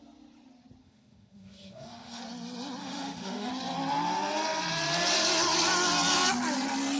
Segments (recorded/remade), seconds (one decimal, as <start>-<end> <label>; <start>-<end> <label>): 0.0-0.8 recorded; 0.8-2.2 remade; 2.2-2.8 recorded; 2.8-3.5 remade; 3.5-7.0 recorded